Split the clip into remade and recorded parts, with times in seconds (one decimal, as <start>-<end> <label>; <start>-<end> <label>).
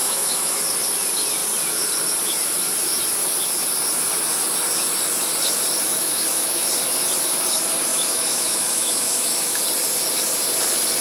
0.0-0.6 remade; 0.6-5.9 recorded; 5.9-6.7 remade; 6.7-7.9 recorded; 7.9-9.6 remade; 9.6-11.0 recorded